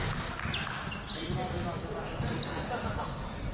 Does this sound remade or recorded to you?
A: recorded